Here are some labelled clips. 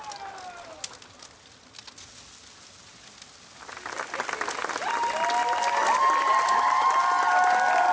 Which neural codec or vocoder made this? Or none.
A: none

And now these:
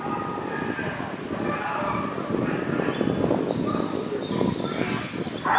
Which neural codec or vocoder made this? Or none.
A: none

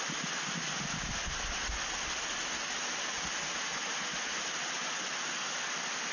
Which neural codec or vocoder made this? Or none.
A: none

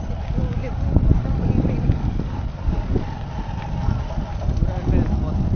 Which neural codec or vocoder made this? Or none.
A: none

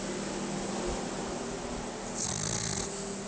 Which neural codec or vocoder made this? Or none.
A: none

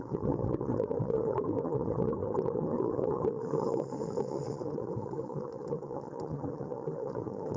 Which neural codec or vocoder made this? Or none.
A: vocoder, WaveNeXt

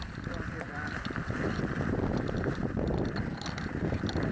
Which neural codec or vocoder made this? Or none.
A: none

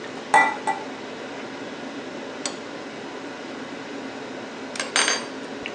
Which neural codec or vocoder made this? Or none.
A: none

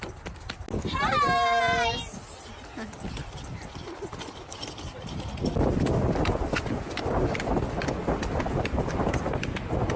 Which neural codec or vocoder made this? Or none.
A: none